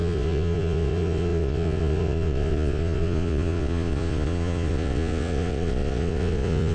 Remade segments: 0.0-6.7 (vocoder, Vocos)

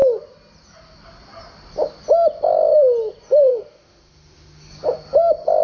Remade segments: 3.5-4.7 (autoencoder, DAC-VAE)

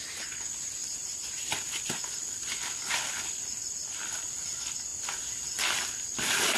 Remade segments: 0.8-2.0 (vocoder, BigVGAN v2)

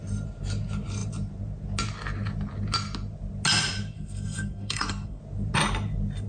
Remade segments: 3.8-5.2 (codec, SNAC)

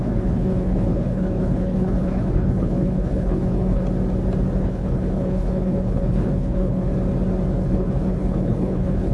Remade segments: 0.0-3.8 (codec, HILCodec); 4.6-6.9; 7.6-9.1

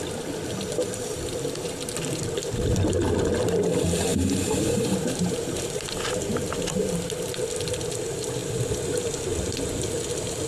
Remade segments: 4.1-5.9 (vocoder, BigVGAN v2)

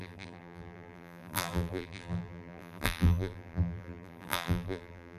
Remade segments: 0.0-5.2 (vocoder, BigVGAN v2)

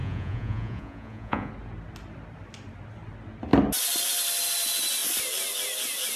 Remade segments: 0.0-1.5 (vocoder, Vocos)